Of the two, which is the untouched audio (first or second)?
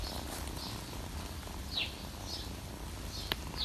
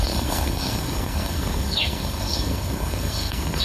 first